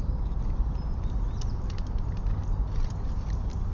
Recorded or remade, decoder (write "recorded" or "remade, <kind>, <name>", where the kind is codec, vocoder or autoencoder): recorded